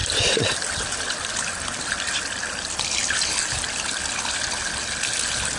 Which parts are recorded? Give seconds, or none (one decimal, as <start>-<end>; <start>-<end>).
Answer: 0.0-5.6